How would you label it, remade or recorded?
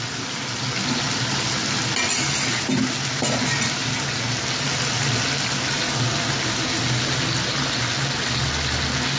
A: recorded